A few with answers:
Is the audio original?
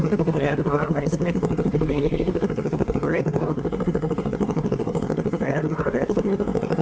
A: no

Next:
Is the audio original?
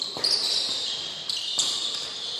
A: no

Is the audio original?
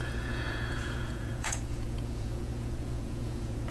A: no